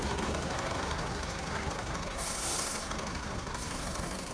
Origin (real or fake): fake